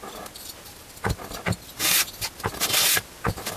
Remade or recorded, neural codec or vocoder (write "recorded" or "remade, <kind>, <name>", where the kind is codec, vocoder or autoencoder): recorded